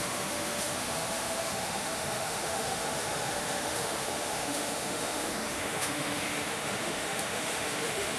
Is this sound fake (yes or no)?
yes